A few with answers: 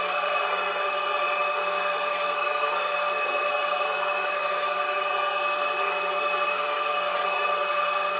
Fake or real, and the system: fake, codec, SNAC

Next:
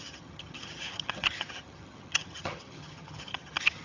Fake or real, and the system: fake, vocoder, HiFi-GAN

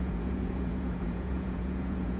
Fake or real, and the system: fake, vocoder, Vocos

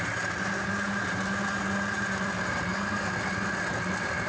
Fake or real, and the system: real